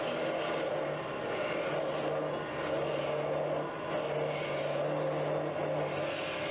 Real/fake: real